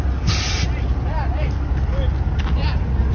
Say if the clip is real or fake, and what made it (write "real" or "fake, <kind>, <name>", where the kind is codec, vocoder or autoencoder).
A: real